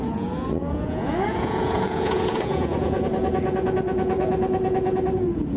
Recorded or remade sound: remade